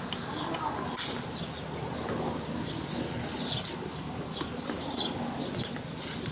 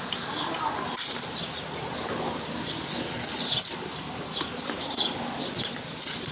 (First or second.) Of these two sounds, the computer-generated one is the second